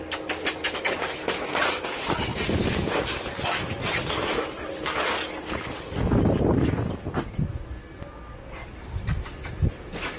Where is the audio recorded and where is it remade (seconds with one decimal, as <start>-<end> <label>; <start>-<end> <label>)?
0.0-10.2 recorded